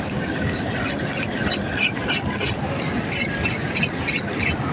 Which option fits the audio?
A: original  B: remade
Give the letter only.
A